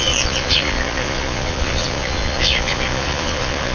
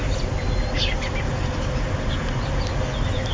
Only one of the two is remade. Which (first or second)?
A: first